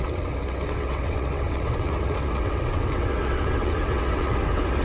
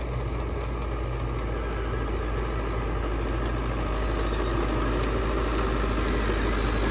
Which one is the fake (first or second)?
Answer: first